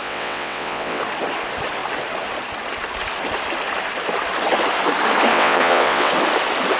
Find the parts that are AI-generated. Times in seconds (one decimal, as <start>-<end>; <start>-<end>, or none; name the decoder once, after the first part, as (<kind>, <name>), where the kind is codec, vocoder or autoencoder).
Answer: 0.0-1.0 (vocoder, WaveNeXt); 5.3-6.1